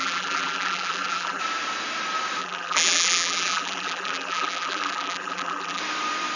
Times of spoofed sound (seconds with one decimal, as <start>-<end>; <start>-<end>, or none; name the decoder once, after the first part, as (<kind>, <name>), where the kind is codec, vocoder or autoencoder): 0.0-1.4 (vocoder, BigVGAN v2); 2.4-5.8